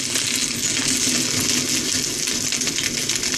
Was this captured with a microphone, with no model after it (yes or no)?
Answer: yes